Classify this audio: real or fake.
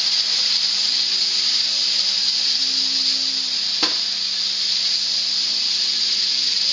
real